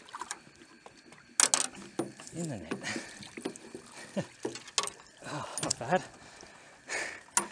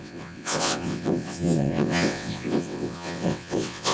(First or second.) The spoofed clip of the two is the second